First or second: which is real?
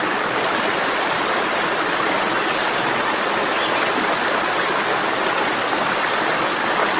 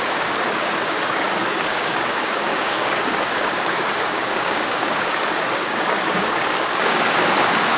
first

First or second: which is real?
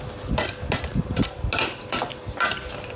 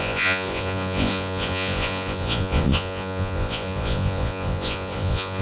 first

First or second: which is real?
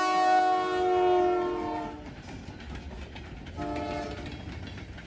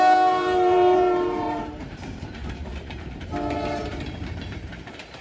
first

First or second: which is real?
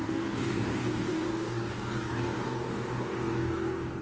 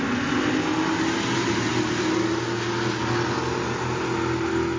second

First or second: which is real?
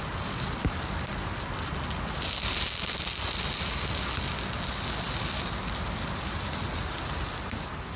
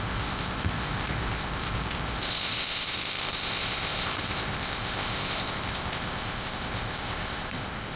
first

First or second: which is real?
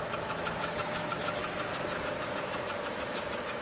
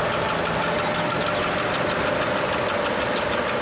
second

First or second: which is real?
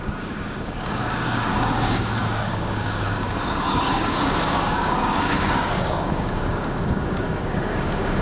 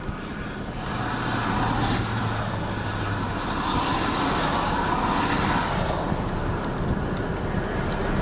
second